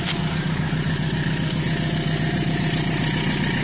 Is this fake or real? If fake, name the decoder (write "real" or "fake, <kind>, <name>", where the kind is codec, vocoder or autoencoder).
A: real